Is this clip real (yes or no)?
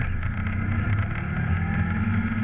yes